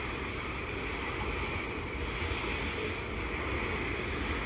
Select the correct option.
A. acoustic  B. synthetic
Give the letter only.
A